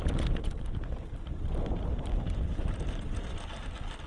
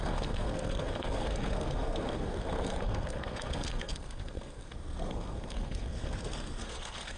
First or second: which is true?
first